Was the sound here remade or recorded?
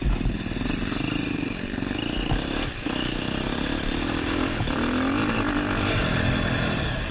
recorded